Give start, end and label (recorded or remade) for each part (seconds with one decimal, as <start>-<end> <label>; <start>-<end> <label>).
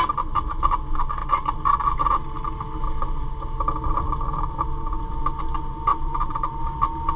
0.0-5.9 recorded; 5.9-6.6 remade; 6.6-7.2 recorded